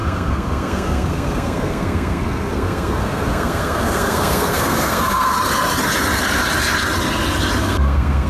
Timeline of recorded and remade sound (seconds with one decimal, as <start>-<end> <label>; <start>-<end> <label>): 0.0-5.3 remade; 5.3-7.6 recorded; 7.6-8.3 remade